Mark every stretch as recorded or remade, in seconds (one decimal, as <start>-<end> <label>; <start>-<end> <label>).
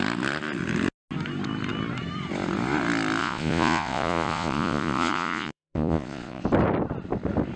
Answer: 0.0-3.2 recorded; 3.2-6.4 remade; 6.4-7.6 recorded